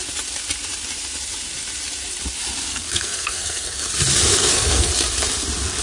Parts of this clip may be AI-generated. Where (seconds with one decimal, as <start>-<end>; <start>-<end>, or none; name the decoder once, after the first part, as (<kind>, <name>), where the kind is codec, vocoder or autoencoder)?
2.7-3.9 (codec, SNAC); 4.3-4.9